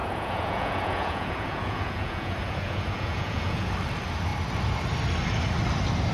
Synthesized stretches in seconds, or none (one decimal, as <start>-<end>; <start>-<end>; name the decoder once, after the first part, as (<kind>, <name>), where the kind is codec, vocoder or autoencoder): 0.0-3.7 (vocoder, Vocos)